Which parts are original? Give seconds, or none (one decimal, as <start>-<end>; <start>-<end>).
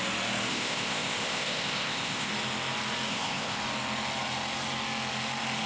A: 0.0-0.5; 2.3-3.1; 3.6-5.7